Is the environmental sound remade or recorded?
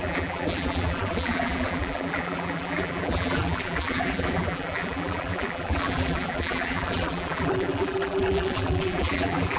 remade